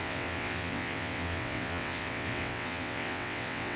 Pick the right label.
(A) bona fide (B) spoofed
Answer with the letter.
B